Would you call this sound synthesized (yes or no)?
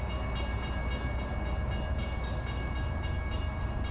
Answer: no